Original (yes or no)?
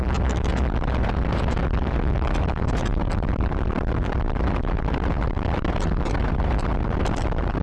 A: no